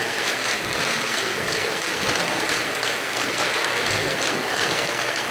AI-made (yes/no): yes